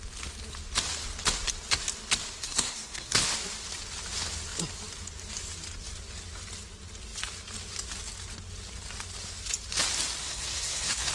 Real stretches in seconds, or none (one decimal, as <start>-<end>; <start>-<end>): 0.0-2.4; 3.2-10.2